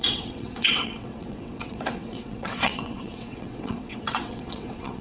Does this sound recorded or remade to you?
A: remade